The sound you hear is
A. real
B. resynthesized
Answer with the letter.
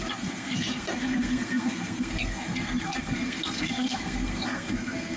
B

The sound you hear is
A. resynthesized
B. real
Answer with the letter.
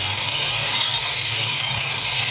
A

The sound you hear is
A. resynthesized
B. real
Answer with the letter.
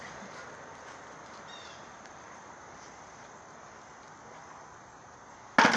B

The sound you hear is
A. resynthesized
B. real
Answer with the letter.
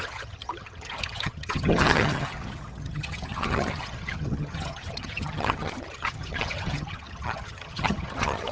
A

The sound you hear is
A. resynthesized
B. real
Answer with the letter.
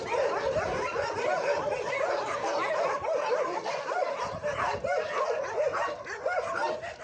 B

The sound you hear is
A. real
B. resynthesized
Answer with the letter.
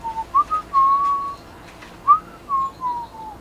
A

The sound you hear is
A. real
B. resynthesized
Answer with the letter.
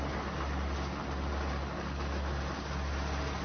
A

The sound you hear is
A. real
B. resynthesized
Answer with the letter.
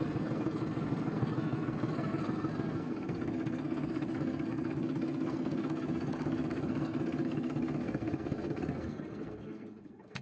B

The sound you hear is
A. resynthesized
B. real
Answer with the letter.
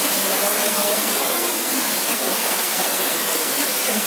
A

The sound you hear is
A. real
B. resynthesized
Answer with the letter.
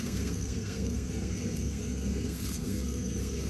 B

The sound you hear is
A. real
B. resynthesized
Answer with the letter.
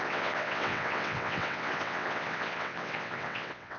B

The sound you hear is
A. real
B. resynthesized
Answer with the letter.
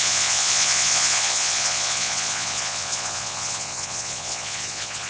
B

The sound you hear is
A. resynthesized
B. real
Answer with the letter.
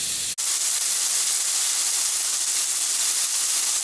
B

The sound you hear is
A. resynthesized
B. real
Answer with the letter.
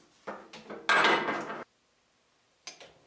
B